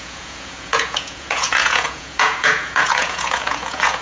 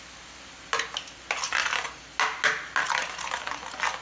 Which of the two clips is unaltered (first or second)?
second